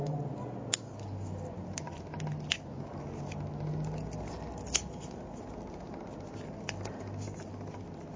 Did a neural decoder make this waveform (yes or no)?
no